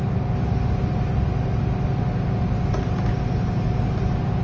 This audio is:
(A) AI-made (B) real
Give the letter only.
B